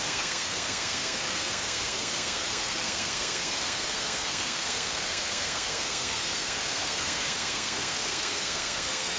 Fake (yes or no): yes